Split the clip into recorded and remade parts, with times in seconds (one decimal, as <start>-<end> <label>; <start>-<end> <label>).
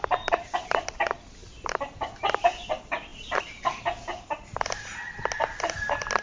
0.0-1.4 recorded; 1.4-2.0 remade; 2.0-3.1 recorded; 3.1-3.8 remade; 3.8-6.2 recorded